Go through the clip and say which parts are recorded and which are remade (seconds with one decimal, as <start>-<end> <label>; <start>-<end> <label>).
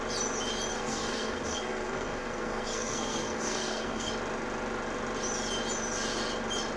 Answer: 0.0-0.7 recorded; 0.7-4.1 remade; 4.1-6.8 recorded